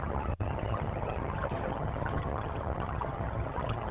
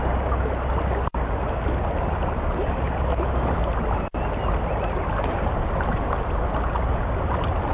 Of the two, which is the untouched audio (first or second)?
second